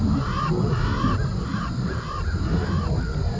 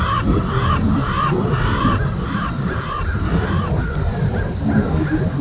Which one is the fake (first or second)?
second